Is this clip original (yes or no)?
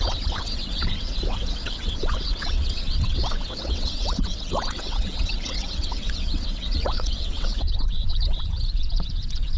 no